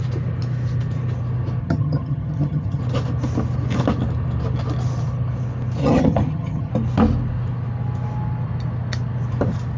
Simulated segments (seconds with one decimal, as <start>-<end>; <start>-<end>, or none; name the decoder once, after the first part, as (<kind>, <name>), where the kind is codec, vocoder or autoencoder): 1.6-2.8 (vocoder, HiFi-GAN); 5.8-6.7